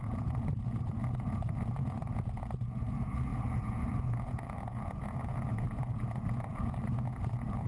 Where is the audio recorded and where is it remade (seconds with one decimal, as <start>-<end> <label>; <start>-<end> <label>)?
0.0-7.7 remade